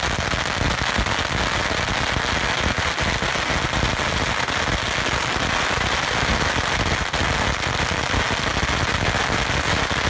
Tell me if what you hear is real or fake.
real